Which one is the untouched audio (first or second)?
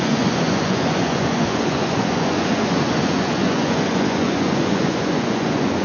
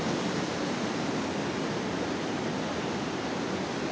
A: second